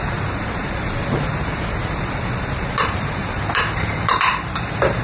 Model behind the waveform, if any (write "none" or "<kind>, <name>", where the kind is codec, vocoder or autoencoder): vocoder, BigVGAN v2